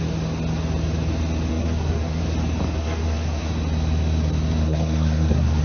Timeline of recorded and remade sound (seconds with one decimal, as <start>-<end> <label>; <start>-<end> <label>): 0.0-1.5 recorded; 1.5-2.2 remade; 2.2-2.8 recorded; 2.8-3.5 remade; 3.5-4.6 recorded; 4.6-5.6 remade